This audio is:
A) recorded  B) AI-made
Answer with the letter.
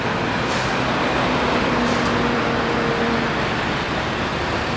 A